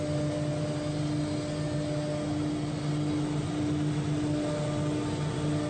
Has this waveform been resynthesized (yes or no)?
no